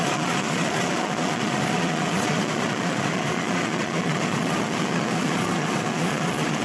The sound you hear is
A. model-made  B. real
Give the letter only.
A